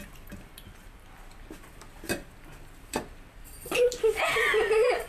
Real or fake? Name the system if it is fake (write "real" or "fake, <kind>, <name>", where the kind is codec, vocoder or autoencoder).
fake, vocoder, BigVGAN v2